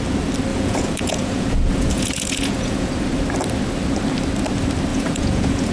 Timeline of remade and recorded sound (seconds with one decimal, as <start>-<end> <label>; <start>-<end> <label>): 0.0-0.5 recorded; 0.5-2.9 remade; 2.9-4.9 recorded; 4.9-5.7 remade